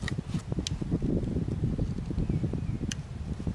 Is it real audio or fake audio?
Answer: real